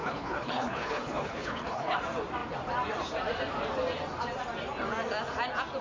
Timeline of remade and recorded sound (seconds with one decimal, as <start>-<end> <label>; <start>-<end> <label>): 0.0-2.0 remade; 2.0-5.8 recorded